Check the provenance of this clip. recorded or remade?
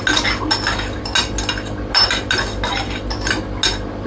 recorded